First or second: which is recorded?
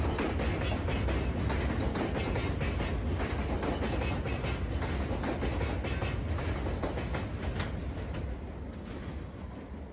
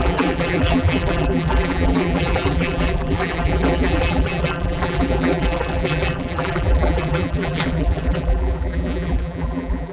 first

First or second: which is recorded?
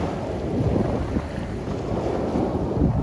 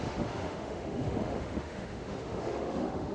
first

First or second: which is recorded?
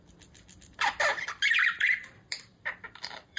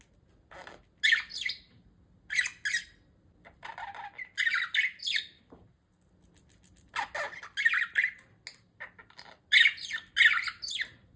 second